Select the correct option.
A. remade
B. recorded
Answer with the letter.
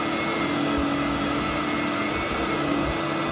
B